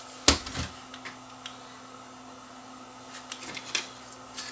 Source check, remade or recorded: recorded